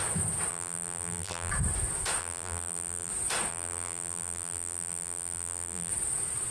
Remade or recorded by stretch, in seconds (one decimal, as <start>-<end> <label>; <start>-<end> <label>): 0.0-0.5 recorded; 0.5-1.5 remade; 1.5-2.2 recorded; 2.2-3.1 remade; 3.1-3.5 recorded; 3.5-5.9 remade; 5.9-6.5 recorded